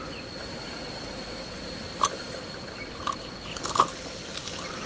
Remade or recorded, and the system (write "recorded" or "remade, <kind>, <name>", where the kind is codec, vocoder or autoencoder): recorded